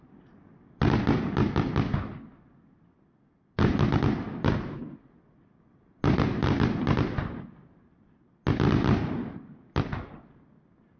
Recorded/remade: recorded